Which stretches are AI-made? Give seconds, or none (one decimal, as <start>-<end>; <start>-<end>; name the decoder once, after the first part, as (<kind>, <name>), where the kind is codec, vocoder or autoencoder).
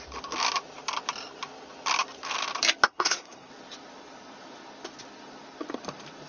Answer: 2.9-3.5 (codec, SNAC)